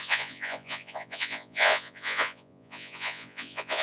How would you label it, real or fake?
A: fake